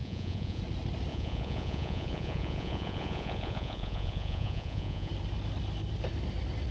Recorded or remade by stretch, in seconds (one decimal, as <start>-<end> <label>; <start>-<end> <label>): 0.0-0.6 remade; 0.6-1.1 recorded; 1.1-5.1 remade; 5.1-6.7 recorded